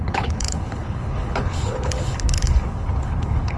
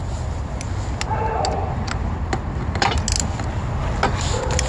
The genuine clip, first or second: second